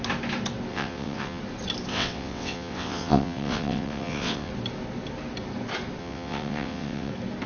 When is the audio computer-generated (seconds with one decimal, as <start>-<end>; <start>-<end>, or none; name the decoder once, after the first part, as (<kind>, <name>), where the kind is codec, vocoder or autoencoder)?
0.7-1.4 (vocoder, WaveNeXt); 1.9-4.5; 6.0-7.1